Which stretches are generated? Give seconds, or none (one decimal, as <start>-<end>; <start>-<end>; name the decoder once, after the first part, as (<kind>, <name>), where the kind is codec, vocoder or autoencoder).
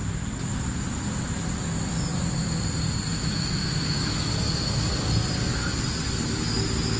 3.1-4.3 (autoencoder, DAC-VAE)